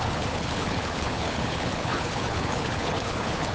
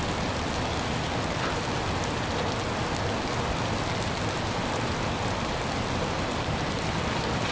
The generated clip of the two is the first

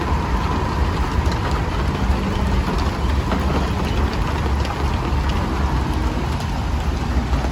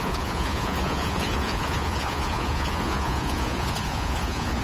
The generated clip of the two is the second